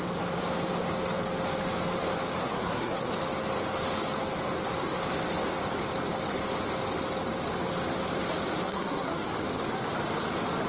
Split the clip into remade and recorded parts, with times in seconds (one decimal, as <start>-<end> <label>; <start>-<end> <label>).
0.0-2.4 recorded; 2.4-3.1 remade; 3.1-8.7 recorded; 8.7-9.3 remade; 9.3-10.7 recorded